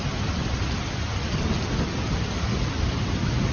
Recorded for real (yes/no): yes